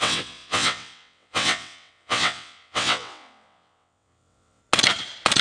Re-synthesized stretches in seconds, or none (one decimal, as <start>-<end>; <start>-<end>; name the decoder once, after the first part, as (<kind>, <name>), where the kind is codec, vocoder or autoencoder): 0.0-4.6 (vocoder, WaveNeXt)